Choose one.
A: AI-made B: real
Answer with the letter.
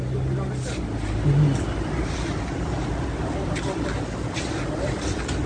B